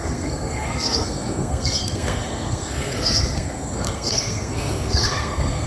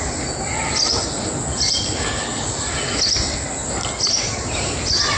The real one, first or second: second